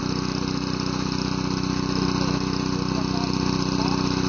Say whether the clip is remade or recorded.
recorded